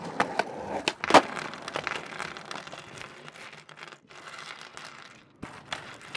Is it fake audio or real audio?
real